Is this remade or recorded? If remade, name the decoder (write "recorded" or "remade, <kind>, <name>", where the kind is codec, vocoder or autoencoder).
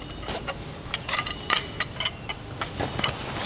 recorded